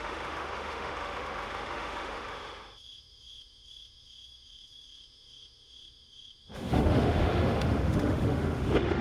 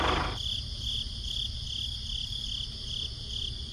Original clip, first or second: second